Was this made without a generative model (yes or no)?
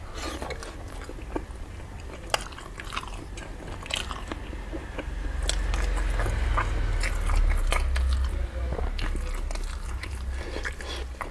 yes